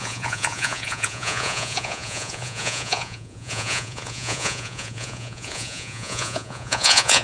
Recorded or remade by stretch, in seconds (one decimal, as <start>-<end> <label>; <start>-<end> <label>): 0.0-7.2 remade